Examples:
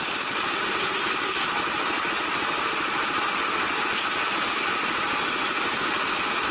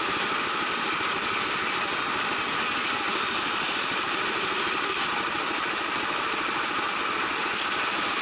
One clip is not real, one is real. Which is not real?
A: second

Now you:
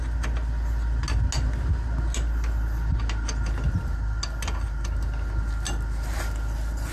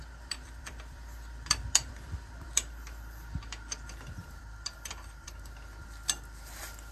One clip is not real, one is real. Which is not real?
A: second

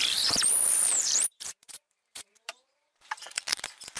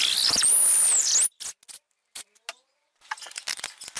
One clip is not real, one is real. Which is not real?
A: first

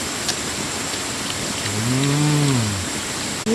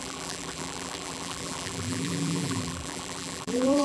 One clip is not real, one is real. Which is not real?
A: second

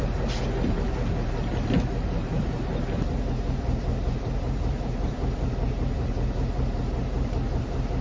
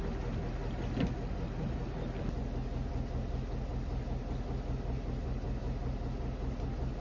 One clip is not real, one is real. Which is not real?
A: first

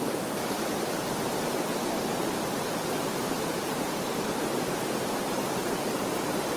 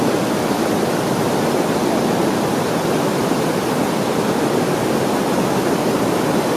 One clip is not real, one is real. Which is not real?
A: first